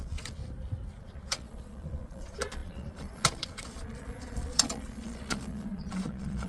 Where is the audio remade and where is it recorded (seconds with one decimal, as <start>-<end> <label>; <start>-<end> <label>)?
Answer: 0.0-0.4 remade; 0.4-1.0 recorded; 1.0-6.5 remade